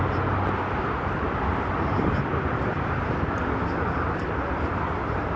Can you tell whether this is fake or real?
real